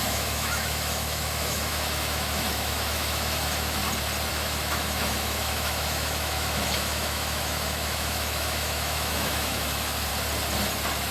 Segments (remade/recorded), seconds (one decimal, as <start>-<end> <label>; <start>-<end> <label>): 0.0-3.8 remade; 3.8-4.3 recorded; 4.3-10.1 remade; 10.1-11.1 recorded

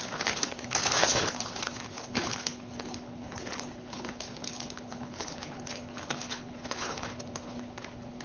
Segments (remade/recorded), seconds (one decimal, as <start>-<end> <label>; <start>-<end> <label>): 0.0-8.2 remade

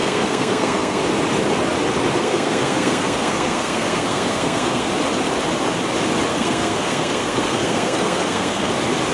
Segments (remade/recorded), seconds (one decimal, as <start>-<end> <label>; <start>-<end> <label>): 0.0-1.0 remade; 1.0-2.2 recorded; 2.2-4.9 remade; 4.9-6.3 recorded; 6.3-8.7 remade; 8.7-9.1 recorded